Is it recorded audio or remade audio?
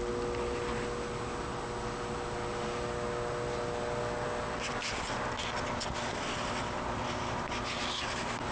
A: recorded